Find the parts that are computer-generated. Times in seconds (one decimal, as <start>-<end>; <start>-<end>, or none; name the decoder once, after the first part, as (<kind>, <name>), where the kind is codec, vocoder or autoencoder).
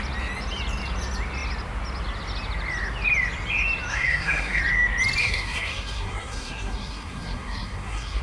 3.9-4.6 (codec, SNAC); 5.2-8.2